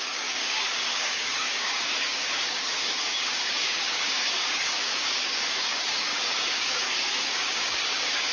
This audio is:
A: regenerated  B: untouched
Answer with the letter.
A